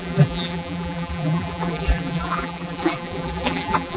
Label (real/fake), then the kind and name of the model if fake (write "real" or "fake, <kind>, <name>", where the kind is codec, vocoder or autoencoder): fake, vocoder, BigVGAN v2